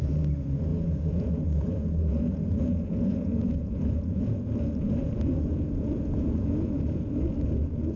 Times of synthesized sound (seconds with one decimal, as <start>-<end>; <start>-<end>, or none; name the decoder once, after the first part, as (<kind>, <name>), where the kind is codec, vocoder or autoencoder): 0.7-4.4 (vocoder, Vocos); 5.0-7.1